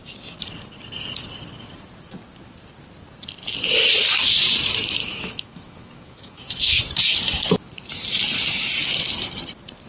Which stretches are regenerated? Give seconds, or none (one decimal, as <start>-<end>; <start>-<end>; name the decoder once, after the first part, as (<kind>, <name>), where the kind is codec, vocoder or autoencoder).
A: 5.0-6.8 (autoencoder, DAC-VAE)